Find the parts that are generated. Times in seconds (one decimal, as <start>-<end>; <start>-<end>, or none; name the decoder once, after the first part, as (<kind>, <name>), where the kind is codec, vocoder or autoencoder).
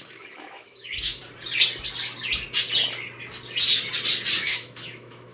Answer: 0.0-1.2 (autoencoder, DAC-VAE); 4.4-5.3